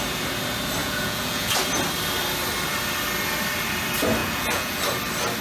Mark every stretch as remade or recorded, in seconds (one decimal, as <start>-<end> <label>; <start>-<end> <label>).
0.0-0.8 recorded; 0.8-1.5 remade; 1.5-4.2 recorded; 4.2-4.8 remade; 4.8-5.4 recorded